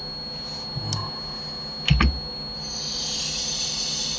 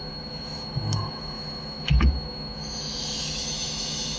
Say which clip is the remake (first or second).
second